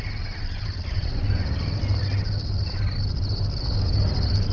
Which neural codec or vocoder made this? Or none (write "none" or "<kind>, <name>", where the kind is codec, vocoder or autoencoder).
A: none